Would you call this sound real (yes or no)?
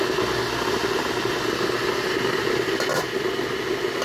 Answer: yes